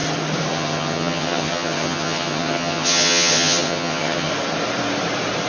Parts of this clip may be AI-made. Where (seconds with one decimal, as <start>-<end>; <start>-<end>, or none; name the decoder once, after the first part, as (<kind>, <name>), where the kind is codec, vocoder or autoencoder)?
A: 0.5-4.3 (vocoder, HiFi-GAN)

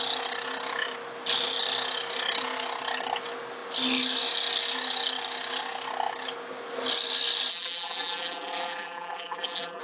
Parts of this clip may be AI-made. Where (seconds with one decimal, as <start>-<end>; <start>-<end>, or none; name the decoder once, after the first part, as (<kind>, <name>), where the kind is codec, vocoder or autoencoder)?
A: 7.5-9.8 (vocoder, BigVGAN v2)

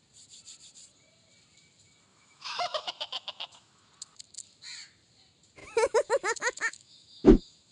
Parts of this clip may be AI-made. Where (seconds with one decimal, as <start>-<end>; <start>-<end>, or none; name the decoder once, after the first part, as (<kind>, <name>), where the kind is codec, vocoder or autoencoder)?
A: 2.1-3.9 (autoencoder, DAC-VAE); 5.6-7.7

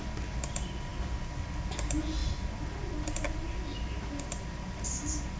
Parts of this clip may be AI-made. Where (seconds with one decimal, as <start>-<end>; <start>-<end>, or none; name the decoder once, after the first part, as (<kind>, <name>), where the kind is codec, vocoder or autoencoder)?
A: none